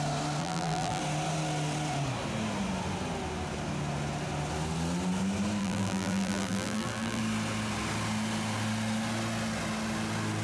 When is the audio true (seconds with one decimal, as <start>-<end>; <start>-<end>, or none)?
0.0-0.4; 1.0-5.6; 7.2-10.4